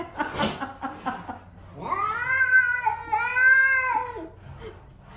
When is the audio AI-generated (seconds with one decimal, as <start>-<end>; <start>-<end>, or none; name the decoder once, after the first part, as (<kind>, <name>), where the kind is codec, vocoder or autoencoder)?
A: none

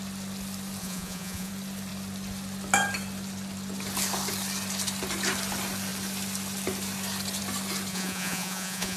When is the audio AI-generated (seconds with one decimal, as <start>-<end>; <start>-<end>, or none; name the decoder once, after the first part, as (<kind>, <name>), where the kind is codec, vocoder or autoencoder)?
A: 0.8-1.5 (vocoder, Vocos); 7.9-9.0

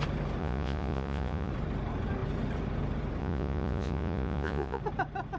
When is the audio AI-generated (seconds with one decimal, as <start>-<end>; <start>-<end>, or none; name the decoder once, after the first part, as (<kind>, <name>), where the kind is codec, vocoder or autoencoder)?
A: 0.4-1.5 (vocoder, Vocos); 3.2-4.8

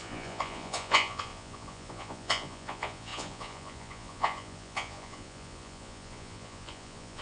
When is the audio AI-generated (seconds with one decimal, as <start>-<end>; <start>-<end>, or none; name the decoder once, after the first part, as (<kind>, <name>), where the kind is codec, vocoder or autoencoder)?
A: 0.0-7.2 (vocoder, Vocos)

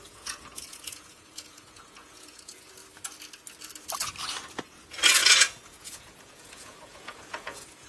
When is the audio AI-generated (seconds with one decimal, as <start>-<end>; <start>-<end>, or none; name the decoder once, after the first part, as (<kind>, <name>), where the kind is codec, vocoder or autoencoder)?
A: 0.0-2.8 (vocoder, Vocos); 4.6-7.9

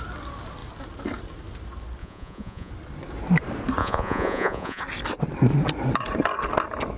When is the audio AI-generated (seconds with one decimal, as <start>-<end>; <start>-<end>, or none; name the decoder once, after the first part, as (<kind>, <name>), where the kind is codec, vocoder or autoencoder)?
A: 2.0-2.7 (vocoder, Vocos); 3.8-4.8

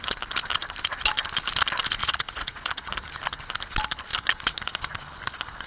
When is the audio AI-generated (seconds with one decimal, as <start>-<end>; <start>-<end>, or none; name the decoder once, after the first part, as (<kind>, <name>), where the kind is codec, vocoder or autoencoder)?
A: 2.0-2.9 (vocoder, Vocos)

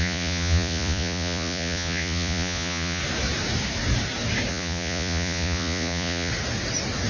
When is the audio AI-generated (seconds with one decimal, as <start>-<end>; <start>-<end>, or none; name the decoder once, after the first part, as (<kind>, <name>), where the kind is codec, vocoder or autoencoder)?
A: 0.0-3.0 (vocoder, Vocos); 4.5-6.3